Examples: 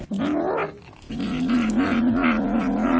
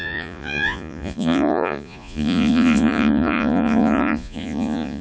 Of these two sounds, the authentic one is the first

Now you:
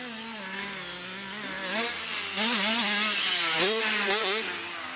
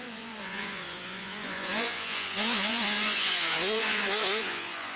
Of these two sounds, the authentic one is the first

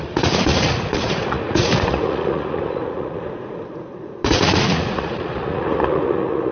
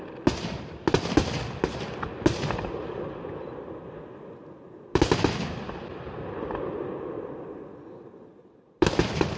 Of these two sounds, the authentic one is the second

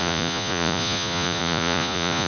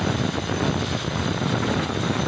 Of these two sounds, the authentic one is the second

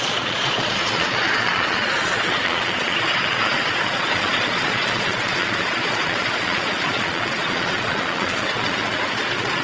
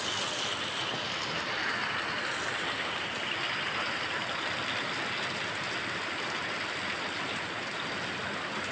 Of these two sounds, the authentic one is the second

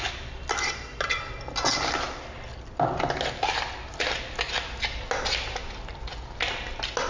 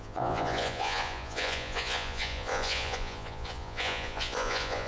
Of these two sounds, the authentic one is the first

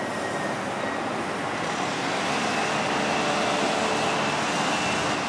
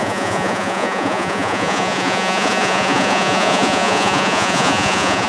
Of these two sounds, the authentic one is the first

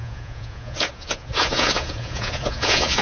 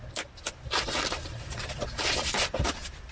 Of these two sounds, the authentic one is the second